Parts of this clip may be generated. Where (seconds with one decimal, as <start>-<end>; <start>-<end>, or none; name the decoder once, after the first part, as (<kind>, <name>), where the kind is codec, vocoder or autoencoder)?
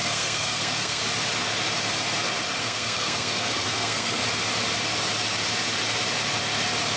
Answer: 0.0-1.0 (codec, SNAC); 2.6-4.2